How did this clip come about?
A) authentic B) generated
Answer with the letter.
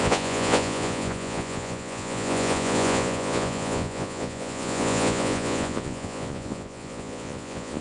B